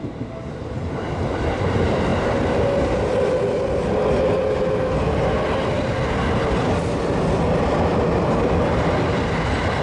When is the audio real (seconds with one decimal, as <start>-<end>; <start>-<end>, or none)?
0.0-9.8